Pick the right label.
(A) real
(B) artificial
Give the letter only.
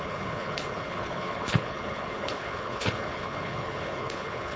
B